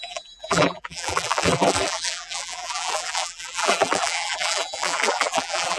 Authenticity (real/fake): fake